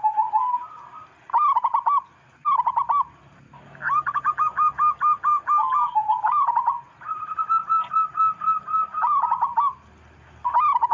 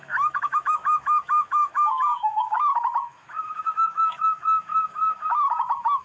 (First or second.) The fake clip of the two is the second